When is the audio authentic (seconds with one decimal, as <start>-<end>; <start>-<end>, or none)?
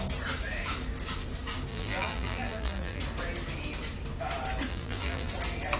0.0-1.7; 3.0-4.7; 5.3-5.8